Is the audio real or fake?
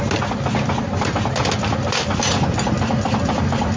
real